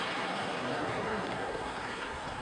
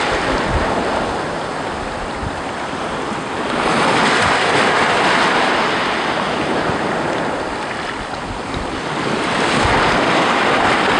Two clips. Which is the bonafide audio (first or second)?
second